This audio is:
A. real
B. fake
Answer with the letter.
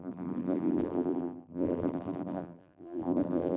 B